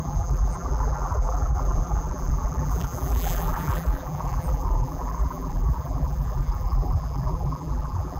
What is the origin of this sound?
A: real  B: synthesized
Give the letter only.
B